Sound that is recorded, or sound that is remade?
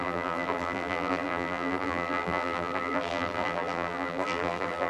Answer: remade